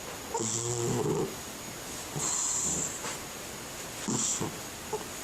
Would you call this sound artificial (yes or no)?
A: no